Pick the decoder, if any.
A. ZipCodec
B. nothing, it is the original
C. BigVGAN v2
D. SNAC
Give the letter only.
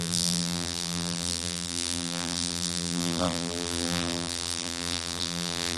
C